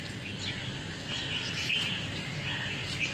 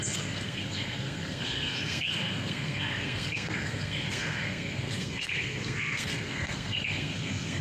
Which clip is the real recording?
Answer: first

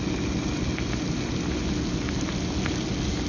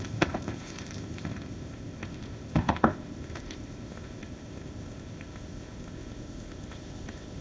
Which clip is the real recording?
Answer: first